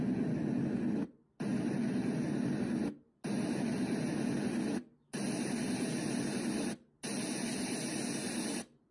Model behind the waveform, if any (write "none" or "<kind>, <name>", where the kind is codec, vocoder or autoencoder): none